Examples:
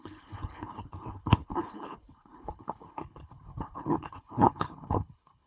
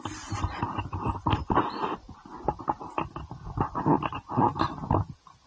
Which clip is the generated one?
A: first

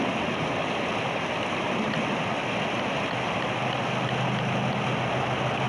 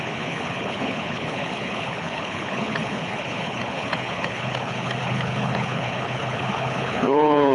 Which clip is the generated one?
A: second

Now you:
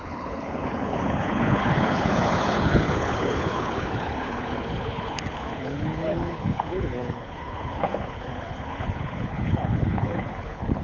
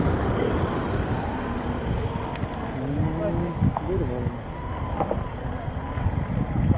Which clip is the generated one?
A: first